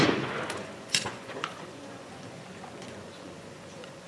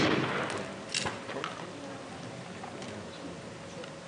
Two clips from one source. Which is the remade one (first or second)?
first